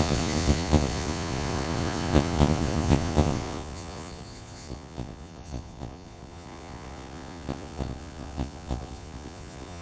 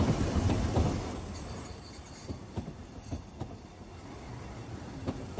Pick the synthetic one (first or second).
first